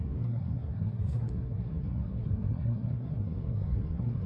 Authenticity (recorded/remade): remade